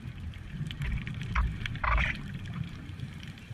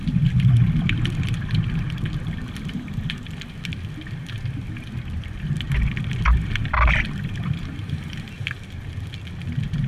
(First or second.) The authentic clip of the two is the second